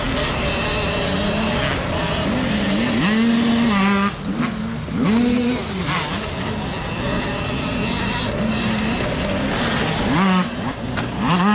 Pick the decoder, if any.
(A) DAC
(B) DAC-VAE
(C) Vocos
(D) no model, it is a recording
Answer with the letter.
D